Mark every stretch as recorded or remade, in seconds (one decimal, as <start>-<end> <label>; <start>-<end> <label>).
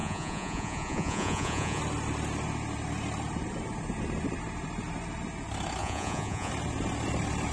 0.0-1.8 remade; 1.8-5.8 recorded; 5.8-6.5 remade; 6.5-7.5 recorded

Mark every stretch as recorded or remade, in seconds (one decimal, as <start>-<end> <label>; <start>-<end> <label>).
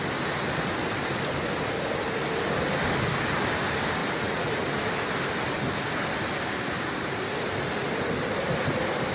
0.0-4.0 recorded; 4.0-4.5 remade; 4.5-9.1 recorded